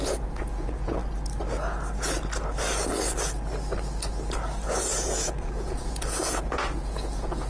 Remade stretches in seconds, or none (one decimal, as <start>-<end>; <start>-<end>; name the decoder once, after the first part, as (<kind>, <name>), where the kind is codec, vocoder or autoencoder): 0.0-1.0 (vocoder, Vocos); 4.8-7.5